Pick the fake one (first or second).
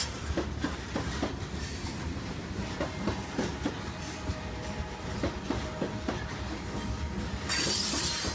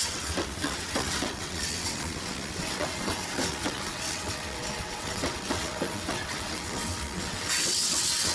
second